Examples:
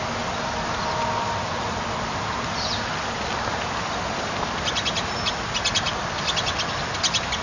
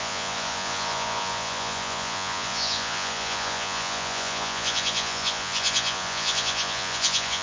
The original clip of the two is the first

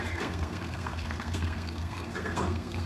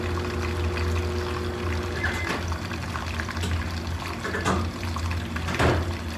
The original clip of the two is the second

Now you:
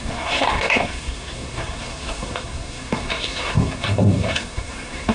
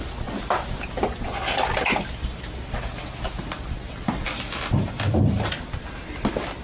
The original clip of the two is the second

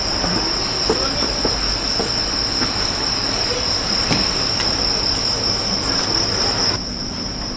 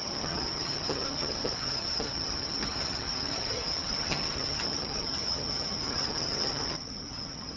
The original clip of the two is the first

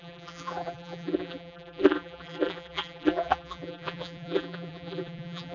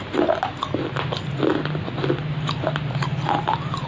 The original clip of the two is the second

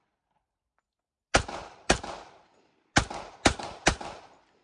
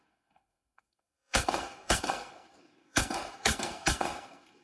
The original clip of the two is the first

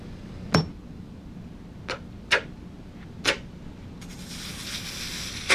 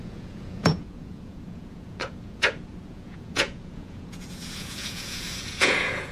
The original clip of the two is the first